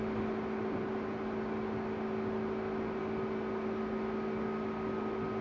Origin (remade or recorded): recorded